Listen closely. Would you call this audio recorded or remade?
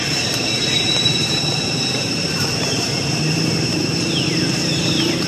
remade